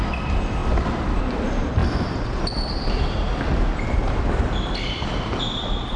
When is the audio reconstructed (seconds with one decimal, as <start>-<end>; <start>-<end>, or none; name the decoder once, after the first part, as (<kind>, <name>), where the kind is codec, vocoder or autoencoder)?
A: none